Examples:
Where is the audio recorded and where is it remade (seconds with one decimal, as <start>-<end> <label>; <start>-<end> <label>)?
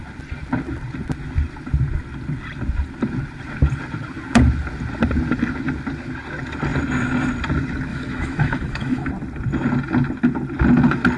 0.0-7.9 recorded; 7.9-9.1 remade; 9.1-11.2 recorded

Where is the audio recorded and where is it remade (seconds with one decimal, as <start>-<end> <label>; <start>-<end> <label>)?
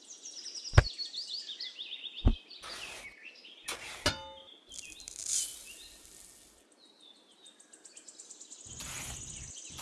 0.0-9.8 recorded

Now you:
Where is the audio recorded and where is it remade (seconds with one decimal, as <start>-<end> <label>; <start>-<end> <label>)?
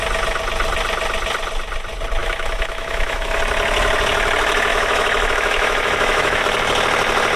0.0-2.2 recorded; 2.2-3.4 remade; 3.4-4.7 recorded; 4.7-6.4 remade; 6.4-7.4 recorded